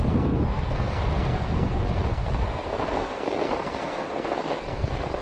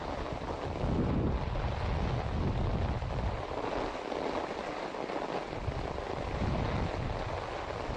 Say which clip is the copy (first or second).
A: first